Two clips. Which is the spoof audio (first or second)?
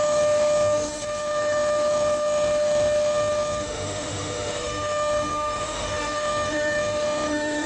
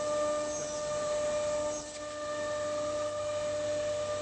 first